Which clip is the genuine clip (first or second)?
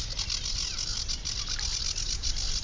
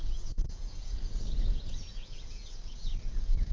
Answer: first